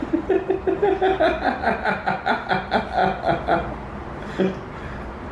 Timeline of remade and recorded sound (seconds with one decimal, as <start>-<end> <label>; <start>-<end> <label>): 0.0-5.3 recorded